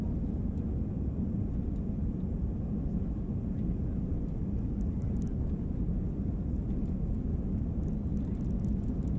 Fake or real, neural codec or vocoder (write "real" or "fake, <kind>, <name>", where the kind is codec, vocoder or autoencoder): real